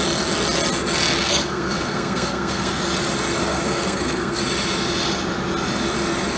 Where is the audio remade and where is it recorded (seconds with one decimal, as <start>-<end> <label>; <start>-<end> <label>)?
0.0-1.2 recorded; 1.2-2.8 remade; 2.8-3.4 recorded; 3.4-4.4 remade; 4.4-6.4 recorded